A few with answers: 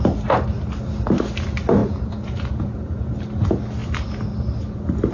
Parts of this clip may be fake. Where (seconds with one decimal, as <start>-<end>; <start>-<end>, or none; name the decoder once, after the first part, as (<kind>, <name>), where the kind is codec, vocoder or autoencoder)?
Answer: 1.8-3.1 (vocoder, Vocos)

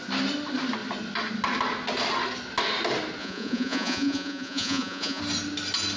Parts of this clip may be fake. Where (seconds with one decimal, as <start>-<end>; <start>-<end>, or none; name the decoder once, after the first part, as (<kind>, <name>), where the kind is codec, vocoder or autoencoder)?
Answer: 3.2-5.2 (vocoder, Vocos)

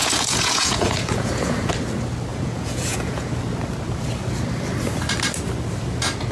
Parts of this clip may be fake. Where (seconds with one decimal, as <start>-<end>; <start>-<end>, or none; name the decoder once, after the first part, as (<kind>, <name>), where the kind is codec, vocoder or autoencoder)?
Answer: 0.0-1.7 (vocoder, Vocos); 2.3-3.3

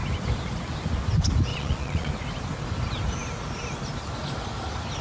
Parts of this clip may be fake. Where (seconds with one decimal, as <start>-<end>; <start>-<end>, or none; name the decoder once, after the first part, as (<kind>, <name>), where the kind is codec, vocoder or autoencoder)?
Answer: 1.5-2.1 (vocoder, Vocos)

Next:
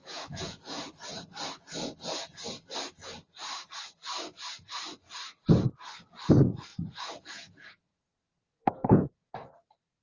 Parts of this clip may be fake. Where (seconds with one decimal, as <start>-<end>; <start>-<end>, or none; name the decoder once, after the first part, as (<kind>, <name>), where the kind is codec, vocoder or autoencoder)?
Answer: 0.0-0.8 (vocoder, Vocos); 6.7-9.3

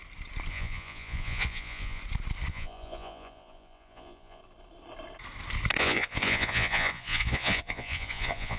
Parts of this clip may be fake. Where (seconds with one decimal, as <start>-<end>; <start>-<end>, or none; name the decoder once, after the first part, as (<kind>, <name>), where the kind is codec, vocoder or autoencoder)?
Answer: 0.5-2.0 (vocoder, Vocos); 2.5-4.4; 5.8-8.6

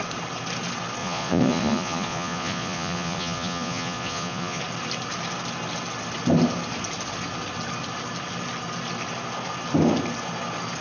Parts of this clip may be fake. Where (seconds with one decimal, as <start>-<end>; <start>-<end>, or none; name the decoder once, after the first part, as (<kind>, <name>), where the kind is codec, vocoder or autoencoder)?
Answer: 1.0-4.6 (vocoder, Vocos)